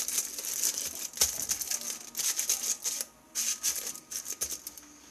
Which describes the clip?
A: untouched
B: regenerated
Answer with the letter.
A